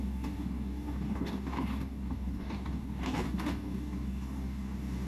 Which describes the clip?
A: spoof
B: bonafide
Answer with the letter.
A